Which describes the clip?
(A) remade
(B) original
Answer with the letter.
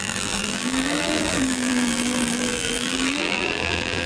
A